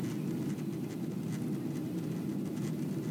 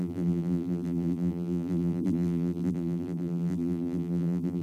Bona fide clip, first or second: first